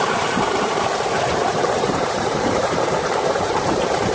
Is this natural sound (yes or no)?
no